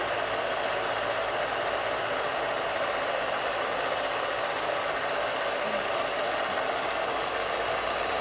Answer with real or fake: real